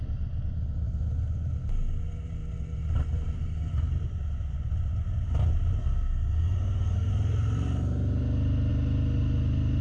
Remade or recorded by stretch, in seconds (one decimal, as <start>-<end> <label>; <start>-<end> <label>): 0.0-5.8 recorded; 5.8-7.1 remade; 7.1-9.8 recorded